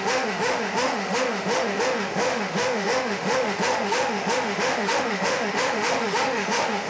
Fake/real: fake